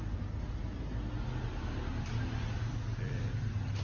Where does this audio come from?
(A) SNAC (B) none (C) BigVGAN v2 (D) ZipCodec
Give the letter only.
B